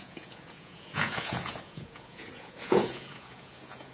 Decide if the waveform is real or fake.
fake